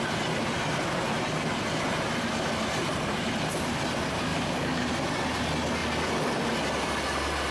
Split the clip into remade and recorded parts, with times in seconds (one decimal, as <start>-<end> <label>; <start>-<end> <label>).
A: 0.0-4.3 recorded; 4.3-4.9 remade; 4.9-7.5 recorded